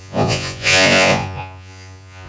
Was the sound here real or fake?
fake